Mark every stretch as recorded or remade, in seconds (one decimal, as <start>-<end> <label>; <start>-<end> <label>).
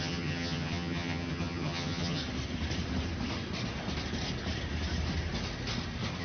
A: 0.0-2.2 remade; 2.2-6.2 recorded